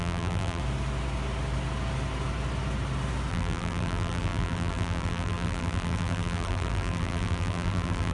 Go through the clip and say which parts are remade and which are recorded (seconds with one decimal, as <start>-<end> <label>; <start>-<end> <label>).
0.0-0.6 remade; 0.6-3.3 recorded; 3.3-8.1 remade